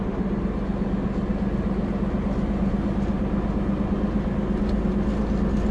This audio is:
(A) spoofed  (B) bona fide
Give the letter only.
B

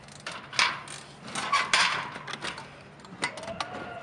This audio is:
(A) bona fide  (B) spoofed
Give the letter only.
A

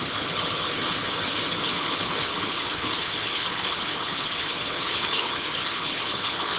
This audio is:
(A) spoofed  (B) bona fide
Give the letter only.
A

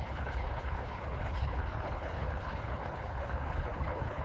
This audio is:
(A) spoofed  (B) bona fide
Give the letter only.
A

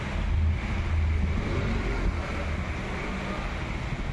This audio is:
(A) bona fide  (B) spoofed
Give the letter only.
A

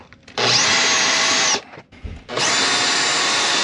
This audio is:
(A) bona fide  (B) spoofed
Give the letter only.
A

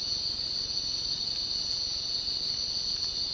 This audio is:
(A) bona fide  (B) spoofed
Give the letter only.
A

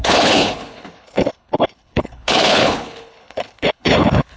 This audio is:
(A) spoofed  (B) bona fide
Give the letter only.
A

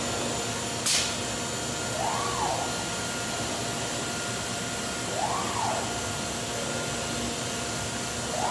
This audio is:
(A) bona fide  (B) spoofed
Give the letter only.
A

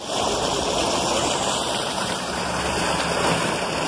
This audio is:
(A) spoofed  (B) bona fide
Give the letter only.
B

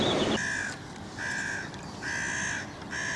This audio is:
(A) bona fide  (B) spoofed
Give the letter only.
A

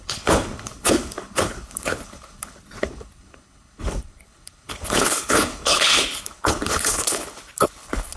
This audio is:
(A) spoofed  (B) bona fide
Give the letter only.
A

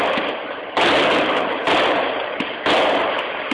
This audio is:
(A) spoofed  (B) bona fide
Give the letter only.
B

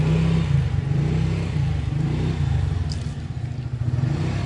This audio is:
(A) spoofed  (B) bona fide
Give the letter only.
B